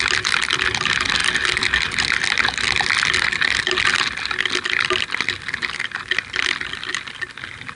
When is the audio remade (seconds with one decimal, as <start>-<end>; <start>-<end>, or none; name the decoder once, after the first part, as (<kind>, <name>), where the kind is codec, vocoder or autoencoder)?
none